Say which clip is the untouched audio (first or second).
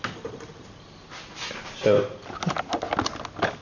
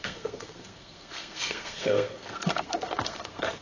first